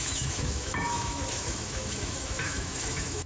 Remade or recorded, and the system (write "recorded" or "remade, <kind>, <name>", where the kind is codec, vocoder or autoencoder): remade, autoencoder, DAC-VAE